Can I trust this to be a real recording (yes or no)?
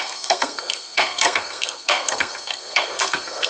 no